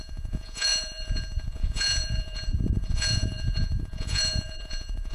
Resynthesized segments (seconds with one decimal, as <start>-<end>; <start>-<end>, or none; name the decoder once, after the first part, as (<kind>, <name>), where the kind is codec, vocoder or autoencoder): 0.0-5.1 (vocoder, Vocos)